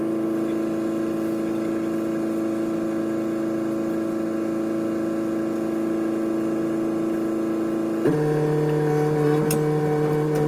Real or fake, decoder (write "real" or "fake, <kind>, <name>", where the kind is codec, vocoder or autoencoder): real